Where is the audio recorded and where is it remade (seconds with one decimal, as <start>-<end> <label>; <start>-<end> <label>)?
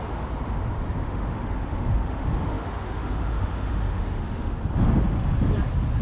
0.0-1.0 recorded; 1.0-4.6 remade; 4.6-6.0 recorded